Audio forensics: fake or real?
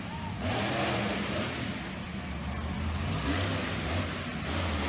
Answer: real